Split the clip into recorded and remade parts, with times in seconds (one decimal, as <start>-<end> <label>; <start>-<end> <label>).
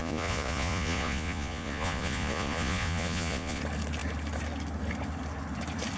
0.0-3.6 remade; 3.6-6.0 recorded